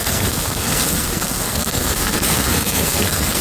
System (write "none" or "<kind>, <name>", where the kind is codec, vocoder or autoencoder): codec, SNAC